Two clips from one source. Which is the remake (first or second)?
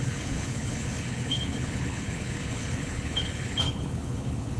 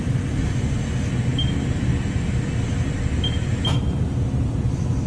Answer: first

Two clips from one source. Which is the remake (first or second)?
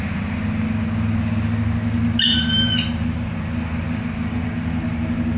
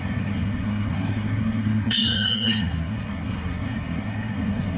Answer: second